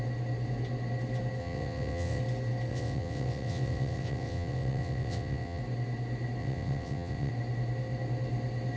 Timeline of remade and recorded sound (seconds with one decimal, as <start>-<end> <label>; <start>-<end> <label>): 0.0-1.4 recorded; 1.4-2.2 remade; 2.2-2.7 recorded; 2.7-5.6 remade; 5.6-6.4 recorded; 6.4-7.3 remade; 7.3-8.8 recorded